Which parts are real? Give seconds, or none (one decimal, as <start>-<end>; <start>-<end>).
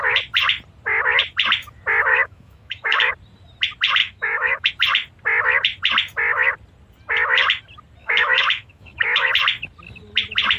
0.0-2.1; 3.1-4.0; 4.7-8.0; 9.3-10.6